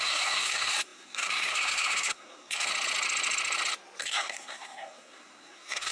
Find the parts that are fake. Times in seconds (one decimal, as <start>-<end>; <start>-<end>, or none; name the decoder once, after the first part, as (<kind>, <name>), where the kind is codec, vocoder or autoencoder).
0.0-2.7 (codec, SNAC); 4.0-5.9